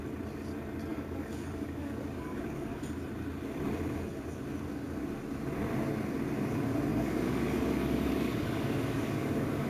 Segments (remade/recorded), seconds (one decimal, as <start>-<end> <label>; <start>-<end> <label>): 0.0-0.9 recorded; 0.9-2.8 remade; 2.8-6.9 recorded; 6.9-9.7 remade